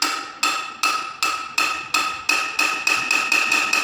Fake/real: real